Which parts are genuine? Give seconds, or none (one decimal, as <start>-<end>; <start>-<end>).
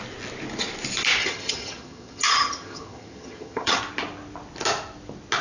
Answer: 0.0-1.2; 3.8-5.4